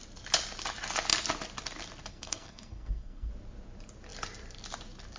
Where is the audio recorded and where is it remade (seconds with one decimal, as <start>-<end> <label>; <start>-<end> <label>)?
0.0-2.1 recorded; 2.1-3.3 remade; 3.3-5.2 recorded